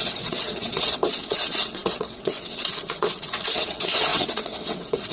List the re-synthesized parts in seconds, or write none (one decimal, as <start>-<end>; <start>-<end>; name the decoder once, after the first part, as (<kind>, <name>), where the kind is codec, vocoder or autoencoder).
0.0-5.1 (vocoder, WaveNeXt)